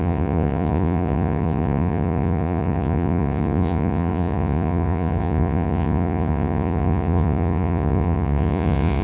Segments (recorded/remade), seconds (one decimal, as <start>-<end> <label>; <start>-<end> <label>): 0.0-9.0 remade